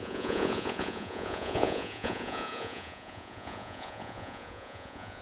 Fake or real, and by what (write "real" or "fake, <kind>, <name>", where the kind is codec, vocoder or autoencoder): fake, vocoder, Vocos